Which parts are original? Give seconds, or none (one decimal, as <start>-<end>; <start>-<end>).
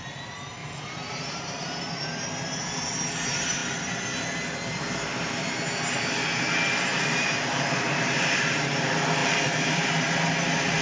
0.0-0.6; 1.8-6.9; 8.4-9.2; 9.9-10.8